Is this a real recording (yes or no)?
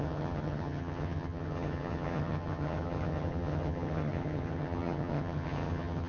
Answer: no